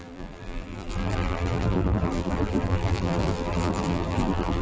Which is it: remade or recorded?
remade